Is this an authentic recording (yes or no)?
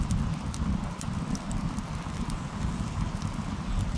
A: yes